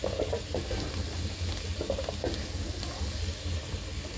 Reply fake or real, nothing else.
real